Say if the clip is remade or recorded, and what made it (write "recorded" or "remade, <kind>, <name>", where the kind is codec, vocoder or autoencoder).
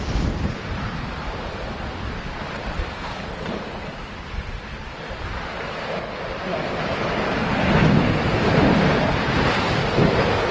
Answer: remade, vocoder, BigVGAN v2